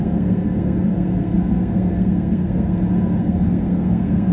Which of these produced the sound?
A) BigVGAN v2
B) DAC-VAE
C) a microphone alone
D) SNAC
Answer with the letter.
D